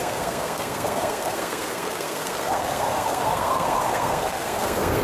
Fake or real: fake